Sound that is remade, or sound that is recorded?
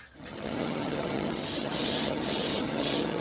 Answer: remade